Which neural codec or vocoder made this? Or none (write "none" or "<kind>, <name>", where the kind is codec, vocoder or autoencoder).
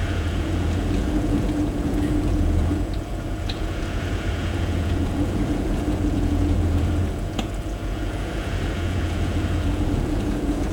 vocoder, Vocos